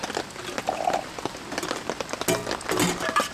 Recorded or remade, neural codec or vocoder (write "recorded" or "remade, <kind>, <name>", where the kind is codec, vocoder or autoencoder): recorded